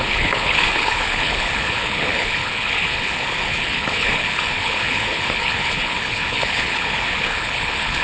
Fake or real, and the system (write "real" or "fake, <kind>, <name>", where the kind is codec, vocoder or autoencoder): fake, codec, HILCodec